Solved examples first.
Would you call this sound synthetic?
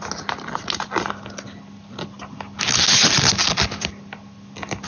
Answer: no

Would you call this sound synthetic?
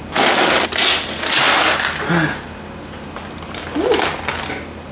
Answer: no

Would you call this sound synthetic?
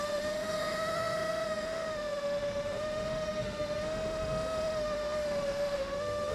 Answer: yes